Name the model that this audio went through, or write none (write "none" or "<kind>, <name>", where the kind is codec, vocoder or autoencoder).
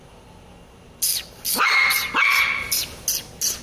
none